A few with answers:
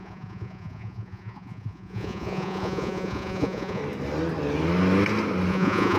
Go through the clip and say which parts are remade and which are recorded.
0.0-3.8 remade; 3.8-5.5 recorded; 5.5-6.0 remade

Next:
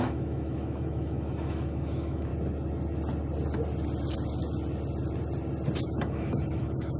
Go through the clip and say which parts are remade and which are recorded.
0.0-2.3 remade; 2.3-5.8 recorded; 5.8-7.0 remade

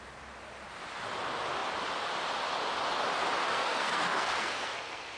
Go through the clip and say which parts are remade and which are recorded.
0.0-3.5 recorded; 3.5-5.2 remade

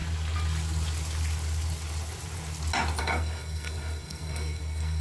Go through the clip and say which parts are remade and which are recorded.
0.0-3.0 recorded; 3.0-5.0 remade